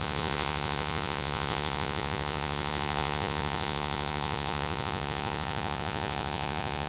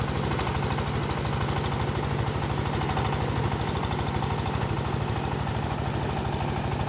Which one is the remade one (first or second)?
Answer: first